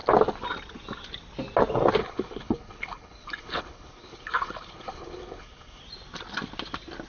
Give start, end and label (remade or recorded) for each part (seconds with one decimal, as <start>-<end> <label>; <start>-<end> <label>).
0.0-2.0 recorded; 2.0-5.8 remade; 5.8-7.1 recorded